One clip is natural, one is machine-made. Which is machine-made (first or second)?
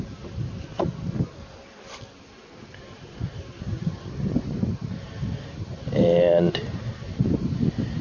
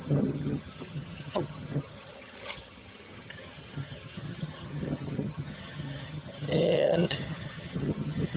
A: second